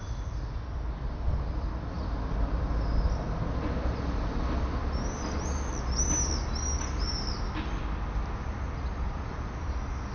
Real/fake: real